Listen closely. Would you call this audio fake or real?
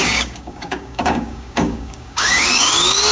fake